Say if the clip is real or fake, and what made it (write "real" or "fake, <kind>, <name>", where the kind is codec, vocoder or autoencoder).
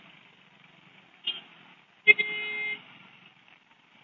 real